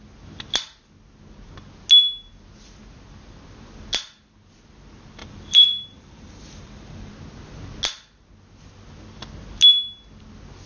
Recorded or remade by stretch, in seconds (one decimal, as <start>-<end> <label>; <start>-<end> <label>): 0.0-5.2 recorded; 5.2-7.1 remade; 7.1-10.7 recorded